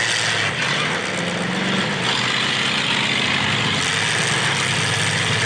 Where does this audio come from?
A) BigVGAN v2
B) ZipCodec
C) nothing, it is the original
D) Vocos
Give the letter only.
C